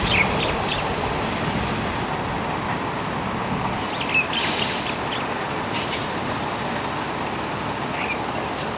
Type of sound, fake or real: real